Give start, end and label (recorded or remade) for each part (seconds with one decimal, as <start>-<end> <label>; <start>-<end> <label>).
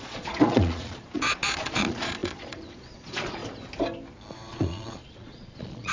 0.0-3.4 remade; 3.4-4.3 recorded; 4.3-5.9 remade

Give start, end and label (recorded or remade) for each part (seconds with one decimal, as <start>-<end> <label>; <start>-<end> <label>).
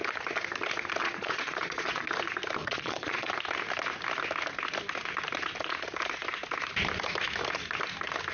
0.0-1.0 recorded; 1.0-2.1 remade; 2.1-2.6 recorded; 2.6-3.3 remade; 3.3-8.3 recorded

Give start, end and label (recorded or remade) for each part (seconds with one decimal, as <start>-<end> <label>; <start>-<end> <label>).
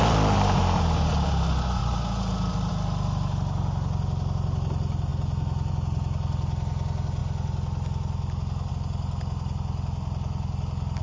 0.0-11.0 recorded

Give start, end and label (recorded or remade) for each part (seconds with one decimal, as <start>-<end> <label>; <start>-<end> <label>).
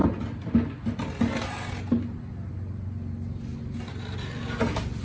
0.0-5.0 recorded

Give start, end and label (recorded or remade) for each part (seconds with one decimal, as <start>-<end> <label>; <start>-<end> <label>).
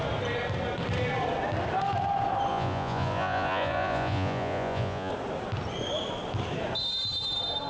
0.0-2.5 recorded; 2.5-5.1 remade; 5.1-7.7 recorded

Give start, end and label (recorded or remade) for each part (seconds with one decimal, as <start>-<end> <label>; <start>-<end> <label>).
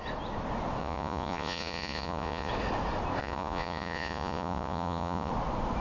0.0-0.8 recorded; 0.8-2.5 remade; 2.5-3.2 recorded; 3.2-5.3 remade; 5.3-5.8 recorded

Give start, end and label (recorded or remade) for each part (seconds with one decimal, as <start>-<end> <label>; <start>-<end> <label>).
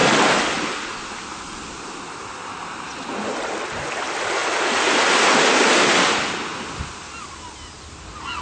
0.0-8.4 recorded